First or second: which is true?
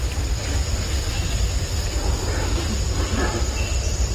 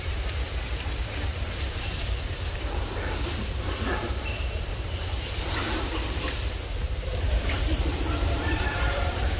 first